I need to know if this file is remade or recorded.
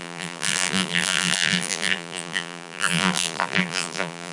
remade